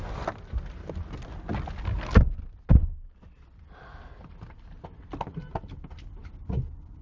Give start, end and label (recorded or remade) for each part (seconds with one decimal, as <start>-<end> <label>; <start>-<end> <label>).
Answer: 0.0-7.0 recorded

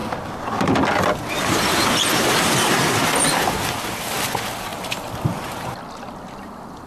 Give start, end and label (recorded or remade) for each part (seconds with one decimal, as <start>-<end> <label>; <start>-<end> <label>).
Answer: 0.0-4.1 remade; 4.1-4.7 recorded; 4.7-5.6 remade; 5.6-6.9 recorded

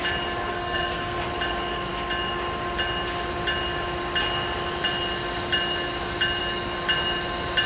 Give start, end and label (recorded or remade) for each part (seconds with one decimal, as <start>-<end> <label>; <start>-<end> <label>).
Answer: 0.0-0.5 recorded; 0.5-1.2 remade; 1.2-7.7 recorded

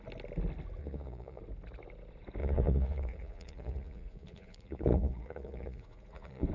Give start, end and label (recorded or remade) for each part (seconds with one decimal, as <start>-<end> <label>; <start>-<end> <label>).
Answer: 0.0-0.8 recorded; 0.8-1.4 remade; 1.4-2.4 recorded; 2.4-6.5 remade

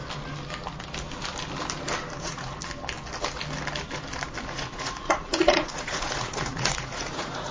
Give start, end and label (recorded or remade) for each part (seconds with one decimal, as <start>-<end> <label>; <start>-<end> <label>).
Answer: 0.0-2.2 recorded; 2.2-2.6 remade; 2.6-4.5 recorded; 4.5-7.5 remade

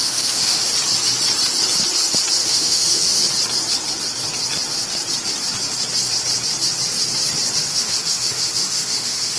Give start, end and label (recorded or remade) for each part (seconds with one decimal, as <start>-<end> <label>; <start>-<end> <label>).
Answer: 0.0-0.7 remade; 0.7-2.4 recorded; 2.4-3.2 remade; 3.2-7.7 recorded; 7.7-9.4 remade

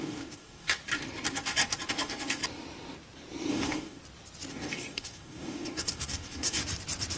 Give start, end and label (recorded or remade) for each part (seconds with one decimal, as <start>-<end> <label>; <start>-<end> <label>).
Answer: 0.0-0.8 remade; 0.8-1.9 recorded; 1.9-2.4 remade; 2.4-3.5 recorded; 3.5-4.0 remade; 4.0-4.5 recorded; 4.5-6.6 remade; 6.6-7.2 recorded

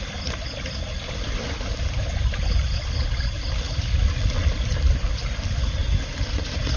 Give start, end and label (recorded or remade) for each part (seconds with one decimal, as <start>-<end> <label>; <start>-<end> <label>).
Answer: 0.0-5.8 recorded; 5.8-6.8 remade